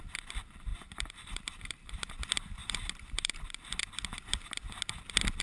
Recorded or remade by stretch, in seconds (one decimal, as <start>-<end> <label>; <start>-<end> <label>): 0.0-0.7 recorded; 0.7-2.1 remade; 2.1-2.6 recorded; 2.6-3.4 remade; 3.4-5.4 recorded

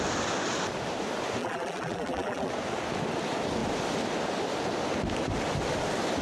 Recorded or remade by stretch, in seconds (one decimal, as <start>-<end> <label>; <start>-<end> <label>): 0.0-1.4 recorded; 1.4-2.5 remade; 2.5-6.2 recorded

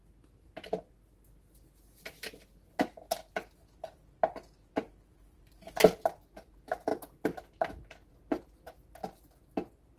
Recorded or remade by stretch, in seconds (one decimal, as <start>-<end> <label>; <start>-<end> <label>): 0.0-10.0 recorded

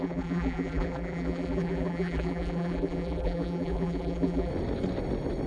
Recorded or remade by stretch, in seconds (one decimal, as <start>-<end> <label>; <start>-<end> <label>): 0.0-4.5 remade; 4.5-5.5 recorded

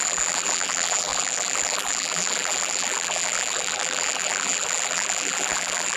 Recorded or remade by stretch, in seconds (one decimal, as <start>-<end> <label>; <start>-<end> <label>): 0.0-6.0 remade

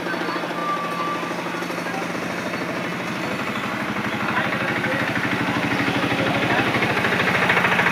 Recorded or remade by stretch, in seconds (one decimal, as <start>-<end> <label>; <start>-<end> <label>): 0.0-0.6 remade; 0.6-2.1 recorded; 2.1-2.9 remade; 2.9-6.9 recorded; 6.9-7.9 remade